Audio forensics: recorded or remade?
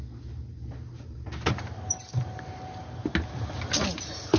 recorded